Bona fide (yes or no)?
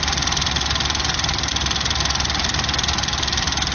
yes